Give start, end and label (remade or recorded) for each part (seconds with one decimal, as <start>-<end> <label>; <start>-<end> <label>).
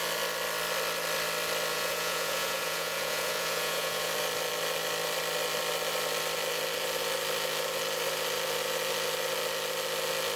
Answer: 0.0-1.7 recorded; 1.7-4.1 remade; 4.1-10.4 recorded